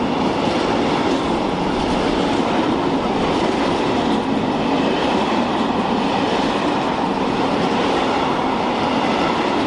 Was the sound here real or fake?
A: real